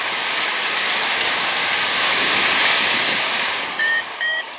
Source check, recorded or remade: remade